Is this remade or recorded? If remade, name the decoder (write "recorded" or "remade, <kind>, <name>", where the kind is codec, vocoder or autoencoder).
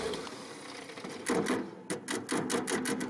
recorded